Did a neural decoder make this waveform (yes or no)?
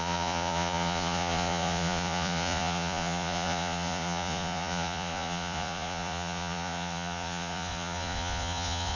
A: yes